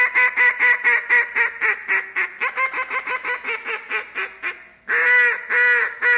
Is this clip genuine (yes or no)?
yes